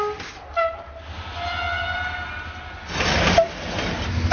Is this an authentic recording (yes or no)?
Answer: yes